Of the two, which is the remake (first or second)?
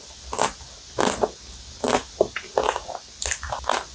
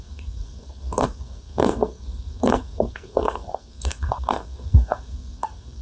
second